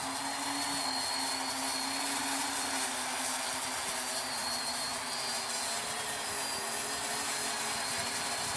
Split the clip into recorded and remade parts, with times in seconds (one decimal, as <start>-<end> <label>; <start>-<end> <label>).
0.0-8.6 recorded